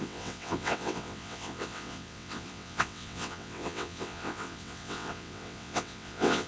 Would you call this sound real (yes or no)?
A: no